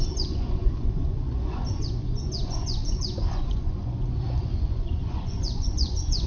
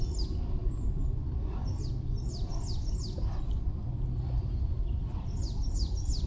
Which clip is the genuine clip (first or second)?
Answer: second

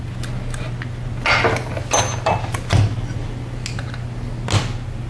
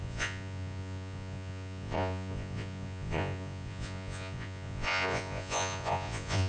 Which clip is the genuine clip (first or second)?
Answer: first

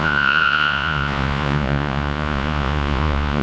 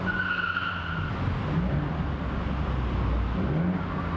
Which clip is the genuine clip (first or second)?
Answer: second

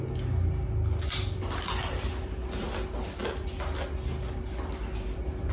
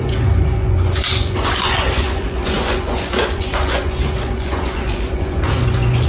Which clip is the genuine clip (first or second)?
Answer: first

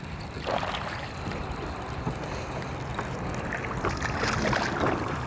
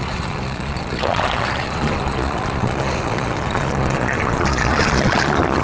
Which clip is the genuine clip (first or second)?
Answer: first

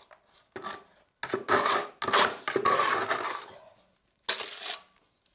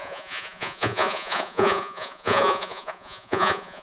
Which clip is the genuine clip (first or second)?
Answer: first